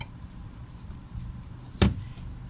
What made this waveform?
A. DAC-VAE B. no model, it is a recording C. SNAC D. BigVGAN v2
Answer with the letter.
B